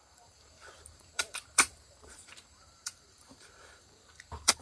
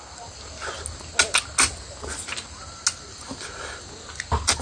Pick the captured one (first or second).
second